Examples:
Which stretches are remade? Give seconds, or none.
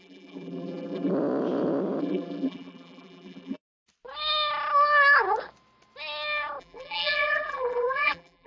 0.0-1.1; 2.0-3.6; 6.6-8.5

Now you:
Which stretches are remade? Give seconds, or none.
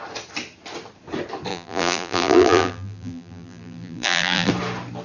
1.5-4.5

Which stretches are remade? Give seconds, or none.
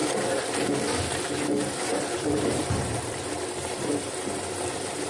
1.9-5.1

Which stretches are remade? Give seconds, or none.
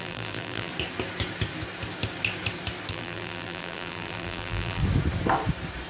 0.0-0.7; 2.9-4.8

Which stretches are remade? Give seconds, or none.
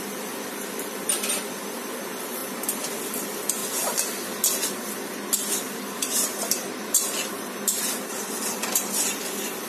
0.0-2.4; 3.1-3.6; 5.6-9.7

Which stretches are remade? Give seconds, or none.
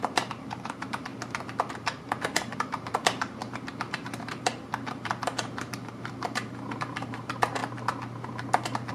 0.0-1.1; 1.7-7.6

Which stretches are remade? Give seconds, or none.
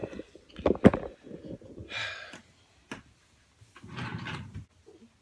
0.0-0.5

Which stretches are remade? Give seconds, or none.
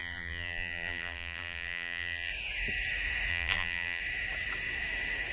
0.0-2.3; 3.3-4.0